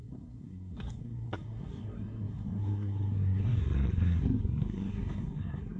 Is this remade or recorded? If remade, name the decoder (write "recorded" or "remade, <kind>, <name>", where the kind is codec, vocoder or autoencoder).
remade, codec, SNAC